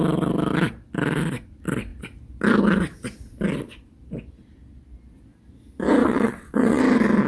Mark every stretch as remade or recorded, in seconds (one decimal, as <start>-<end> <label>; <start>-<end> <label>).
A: 0.0-6.0 recorded; 6.0-6.8 remade; 6.8-7.3 recorded